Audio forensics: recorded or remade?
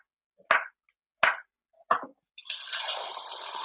recorded